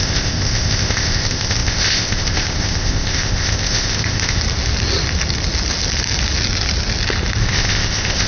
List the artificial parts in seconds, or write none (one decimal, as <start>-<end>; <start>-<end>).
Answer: 0.0-4.4; 7.4-8.3